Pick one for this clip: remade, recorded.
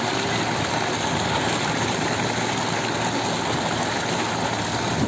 recorded